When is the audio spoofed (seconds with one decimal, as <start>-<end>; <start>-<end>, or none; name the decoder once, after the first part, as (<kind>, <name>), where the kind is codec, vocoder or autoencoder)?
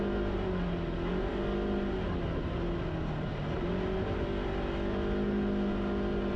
none